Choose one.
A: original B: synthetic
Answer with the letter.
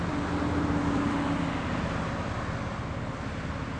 A